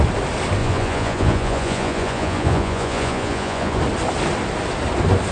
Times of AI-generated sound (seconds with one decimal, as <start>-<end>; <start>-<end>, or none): 0.6-3.8

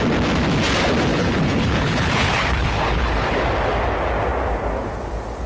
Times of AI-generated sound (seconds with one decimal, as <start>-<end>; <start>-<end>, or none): 1.1-3.4

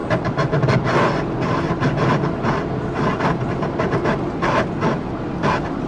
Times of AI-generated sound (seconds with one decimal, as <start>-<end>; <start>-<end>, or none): none

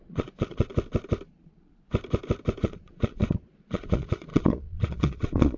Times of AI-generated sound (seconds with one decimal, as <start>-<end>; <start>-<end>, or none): 0.0-0.7; 1.3-1.9; 2.6-5.6